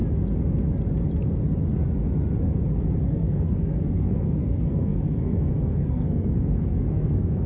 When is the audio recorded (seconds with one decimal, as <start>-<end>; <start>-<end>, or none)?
0.0-3.1